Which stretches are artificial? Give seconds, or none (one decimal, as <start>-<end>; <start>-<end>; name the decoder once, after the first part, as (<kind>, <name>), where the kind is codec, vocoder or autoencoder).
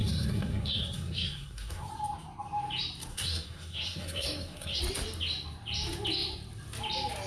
0.0-1.9 (codec, SNAC); 3.1-4.8